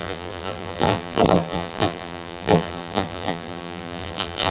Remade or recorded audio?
remade